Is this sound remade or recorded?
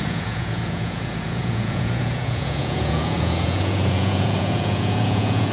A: remade